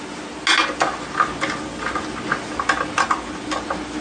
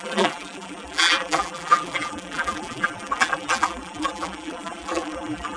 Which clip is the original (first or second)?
first